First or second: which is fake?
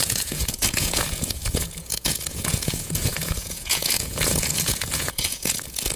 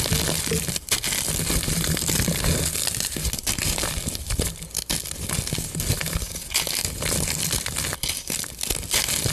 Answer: first